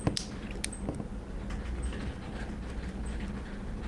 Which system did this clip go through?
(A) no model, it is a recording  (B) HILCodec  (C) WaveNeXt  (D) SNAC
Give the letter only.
A